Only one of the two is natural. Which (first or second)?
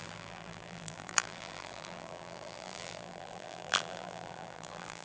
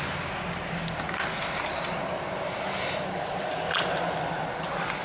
second